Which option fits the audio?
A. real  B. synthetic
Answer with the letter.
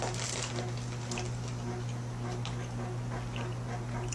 A